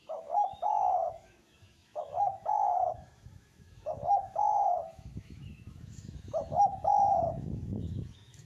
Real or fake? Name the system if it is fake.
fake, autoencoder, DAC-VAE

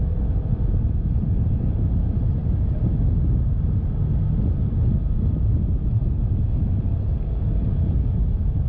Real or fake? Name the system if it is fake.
real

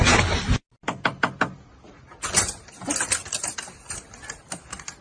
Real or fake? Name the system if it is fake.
real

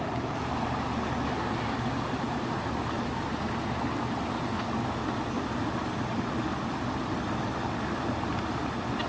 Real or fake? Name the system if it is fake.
real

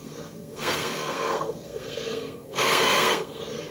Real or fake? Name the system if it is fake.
fake, codec, SNAC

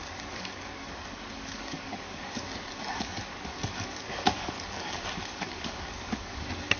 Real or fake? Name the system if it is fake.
fake, codec, DAC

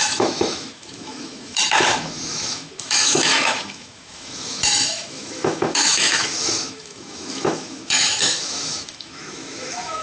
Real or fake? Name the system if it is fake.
fake, autoencoder, DAC-VAE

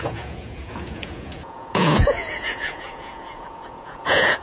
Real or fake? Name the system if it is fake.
fake, vocoder, Vocos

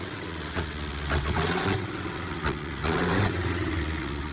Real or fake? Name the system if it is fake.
fake, vocoder, WaveNeXt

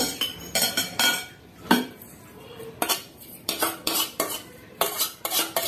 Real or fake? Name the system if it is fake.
fake, vocoder, BigVGAN v2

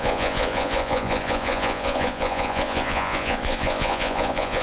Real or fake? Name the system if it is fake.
fake, vocoder, Vocos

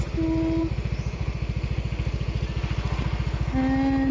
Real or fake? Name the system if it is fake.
real